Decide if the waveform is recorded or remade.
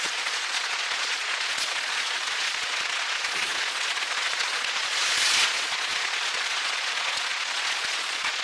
remade